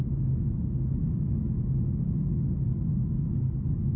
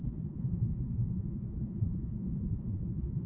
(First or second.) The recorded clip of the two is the first